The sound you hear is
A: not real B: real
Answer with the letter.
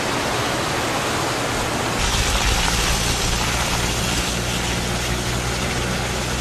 B